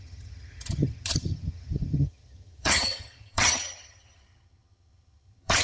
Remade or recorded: remade